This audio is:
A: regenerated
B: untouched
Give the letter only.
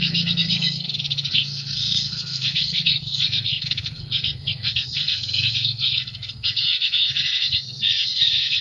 A